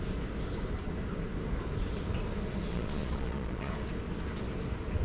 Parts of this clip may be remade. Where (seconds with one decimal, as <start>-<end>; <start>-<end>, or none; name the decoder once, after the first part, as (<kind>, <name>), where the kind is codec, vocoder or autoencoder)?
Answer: 2.7-3.7 (vocoder, Vocos)